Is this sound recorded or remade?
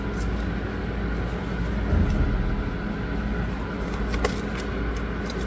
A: recorded